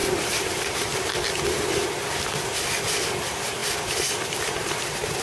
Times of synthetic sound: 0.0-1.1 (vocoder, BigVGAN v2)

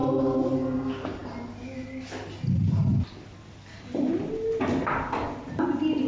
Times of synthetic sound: none

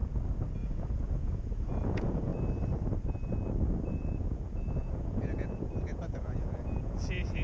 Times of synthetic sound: 0.6-2.3 (vocoder, Vocos); 3.9-7.4

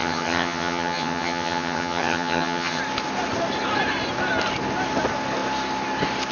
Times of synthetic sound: 0.0-2.8 (vocoder, HiFi-GAN)

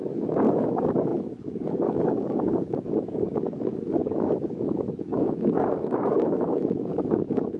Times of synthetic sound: 0.0-7.6 (codec, DAC)

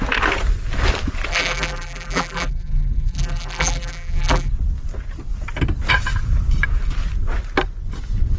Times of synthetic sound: 1.3-4.5 (vocoder, BigVGAN v2)